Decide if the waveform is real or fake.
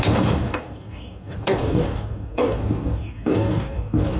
fake